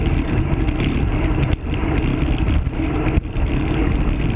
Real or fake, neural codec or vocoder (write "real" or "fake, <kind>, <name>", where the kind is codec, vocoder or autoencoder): real